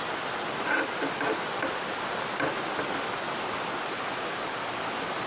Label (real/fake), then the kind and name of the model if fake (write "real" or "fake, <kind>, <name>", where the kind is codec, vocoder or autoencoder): real